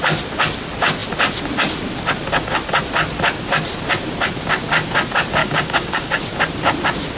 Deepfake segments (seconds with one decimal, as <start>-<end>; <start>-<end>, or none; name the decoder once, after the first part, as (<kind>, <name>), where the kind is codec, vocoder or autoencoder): 5.4-6.2 (codec, DAC)